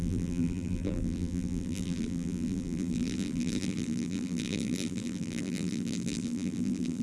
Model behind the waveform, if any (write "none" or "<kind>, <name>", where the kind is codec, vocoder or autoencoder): vocoder, BigVGAN v2